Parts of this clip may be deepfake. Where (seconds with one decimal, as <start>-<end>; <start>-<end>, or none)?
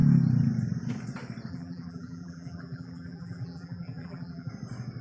1.5-4.5